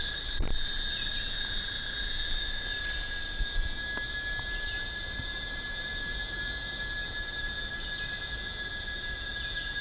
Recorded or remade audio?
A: recorded